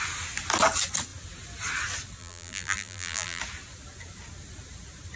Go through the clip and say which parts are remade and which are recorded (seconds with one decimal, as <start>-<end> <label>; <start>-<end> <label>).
0.0-2.2 recorded; 2.2-3.4 remade; 3.4-5.2 recorded